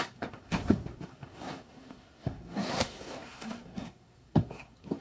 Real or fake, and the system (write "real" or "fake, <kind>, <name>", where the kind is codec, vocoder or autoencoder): fake, codec, SNAC